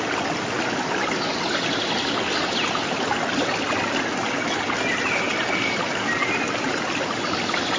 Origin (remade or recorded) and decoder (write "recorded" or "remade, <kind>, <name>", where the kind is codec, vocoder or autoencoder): recorded